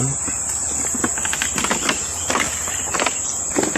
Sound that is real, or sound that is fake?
real